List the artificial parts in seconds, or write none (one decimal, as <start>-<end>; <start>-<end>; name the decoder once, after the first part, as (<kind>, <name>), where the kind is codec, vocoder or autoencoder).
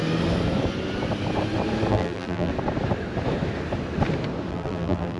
1.9-2.5 (vocoder, BigVGAN v2); 4.5-5.2